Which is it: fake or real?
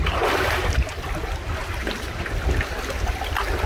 real